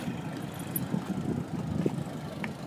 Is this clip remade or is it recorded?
recorded